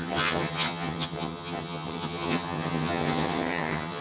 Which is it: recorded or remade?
remade